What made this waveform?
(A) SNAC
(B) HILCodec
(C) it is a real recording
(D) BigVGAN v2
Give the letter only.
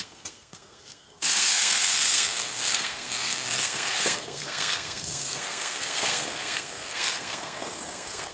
A